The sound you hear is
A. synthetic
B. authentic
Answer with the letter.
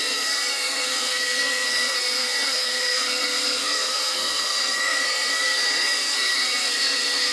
A